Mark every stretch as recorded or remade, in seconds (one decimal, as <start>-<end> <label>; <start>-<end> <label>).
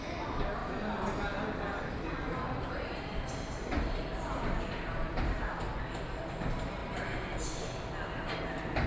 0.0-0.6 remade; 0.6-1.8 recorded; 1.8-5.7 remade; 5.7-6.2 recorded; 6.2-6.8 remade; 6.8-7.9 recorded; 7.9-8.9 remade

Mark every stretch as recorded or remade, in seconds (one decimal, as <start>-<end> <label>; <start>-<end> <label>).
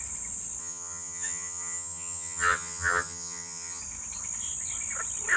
0.0-0.6 recorded; 0.6-3.8 remade; 3.8-5.4 recorded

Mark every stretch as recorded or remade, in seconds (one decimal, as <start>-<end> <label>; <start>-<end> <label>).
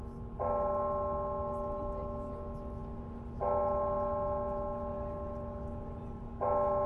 0.0-6.9 recorded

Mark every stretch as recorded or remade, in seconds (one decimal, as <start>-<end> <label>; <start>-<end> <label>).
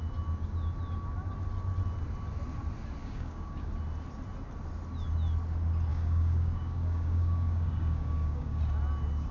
0.0-3.0 recorded; 3.0-3.7 remade; 3.7-5.9 recorded; 5.9-8.6 remade; 8.6-9.3 recorded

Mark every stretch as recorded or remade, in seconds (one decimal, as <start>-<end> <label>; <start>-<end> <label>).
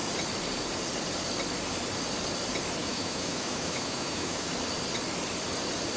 0.0-2.8 recorded; 2.8-4.5 remade; 4.5-6.0 recorded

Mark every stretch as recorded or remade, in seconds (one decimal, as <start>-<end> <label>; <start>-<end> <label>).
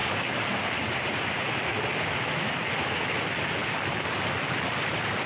0.0-5.3 recorded